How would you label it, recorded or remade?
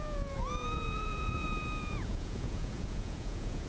remade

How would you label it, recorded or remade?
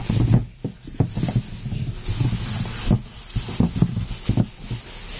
recorded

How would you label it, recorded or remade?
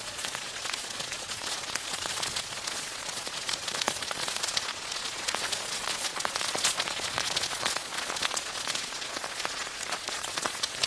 remade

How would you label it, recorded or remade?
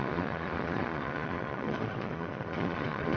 remade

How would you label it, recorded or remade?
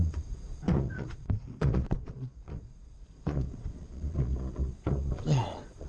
remade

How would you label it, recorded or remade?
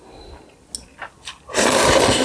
recorded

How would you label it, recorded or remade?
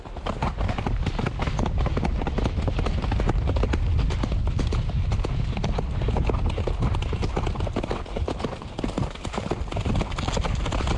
recorded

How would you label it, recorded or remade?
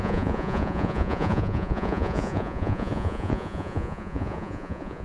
remade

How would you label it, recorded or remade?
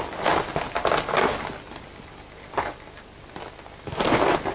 recorded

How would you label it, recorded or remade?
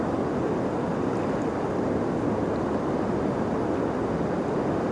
recorded